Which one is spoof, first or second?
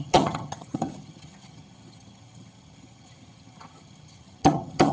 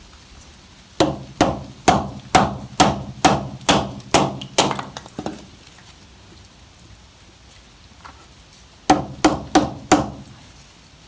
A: first